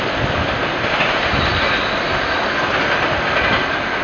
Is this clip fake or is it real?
real